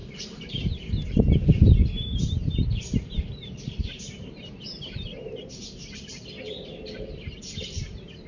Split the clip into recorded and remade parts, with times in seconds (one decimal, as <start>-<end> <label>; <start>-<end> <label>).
0.0-0.5 remade; 0.5-1.0 recorded; 1.0-6.0 remade; 6.0-8.3 recorded